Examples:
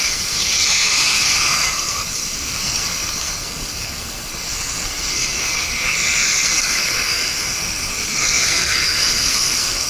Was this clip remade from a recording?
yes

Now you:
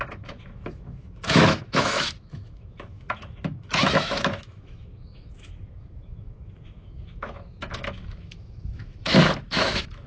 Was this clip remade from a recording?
yes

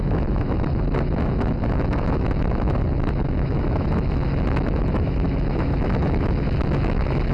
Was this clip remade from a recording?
yes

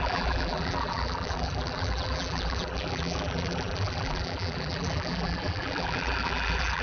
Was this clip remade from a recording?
yes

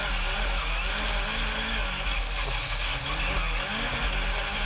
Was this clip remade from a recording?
no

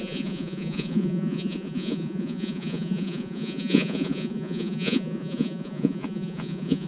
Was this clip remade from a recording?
yes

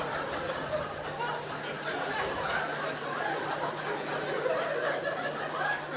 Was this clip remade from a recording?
no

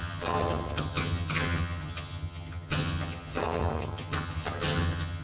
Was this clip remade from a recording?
yes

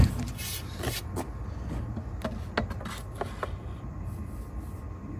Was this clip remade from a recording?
no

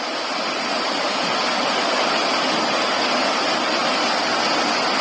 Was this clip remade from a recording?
no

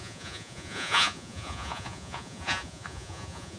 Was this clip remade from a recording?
yes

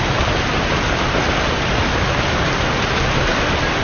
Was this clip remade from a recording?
no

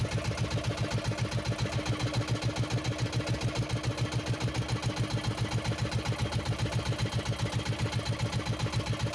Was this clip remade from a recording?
no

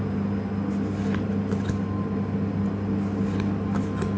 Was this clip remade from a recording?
no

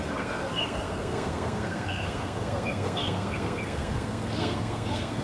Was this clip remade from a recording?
yes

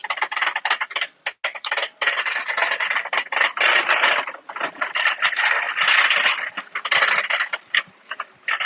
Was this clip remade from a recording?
no